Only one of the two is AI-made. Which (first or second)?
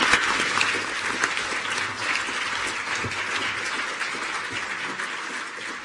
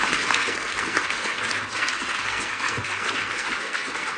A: second